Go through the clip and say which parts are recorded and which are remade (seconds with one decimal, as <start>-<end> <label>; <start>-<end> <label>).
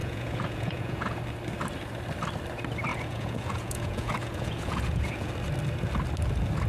0.0-1.2 remade; 1.2-2.9 recorded; 2.9-5.3 remade; 5.3-6.7 recorded